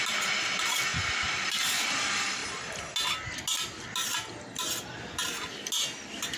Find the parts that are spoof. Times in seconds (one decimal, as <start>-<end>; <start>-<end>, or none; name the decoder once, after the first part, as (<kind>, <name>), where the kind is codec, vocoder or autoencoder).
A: none